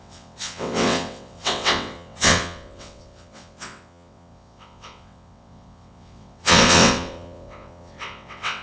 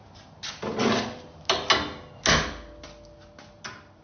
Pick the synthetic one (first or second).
first